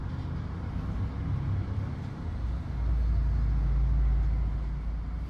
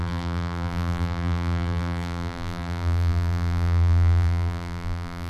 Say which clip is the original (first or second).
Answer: first